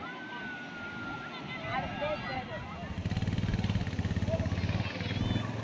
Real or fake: real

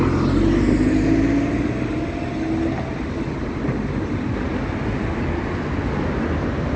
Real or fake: real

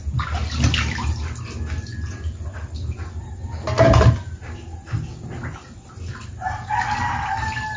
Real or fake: real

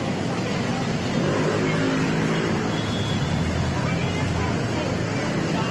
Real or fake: real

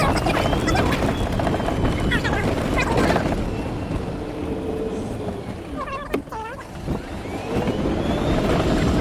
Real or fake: real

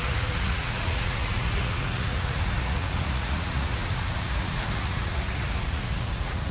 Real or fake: fake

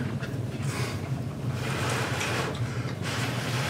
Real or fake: fake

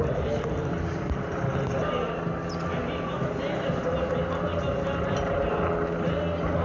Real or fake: real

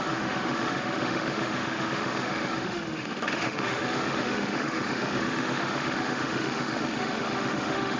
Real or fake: fake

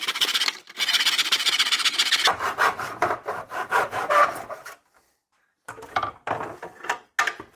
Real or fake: real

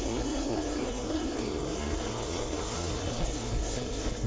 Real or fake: fake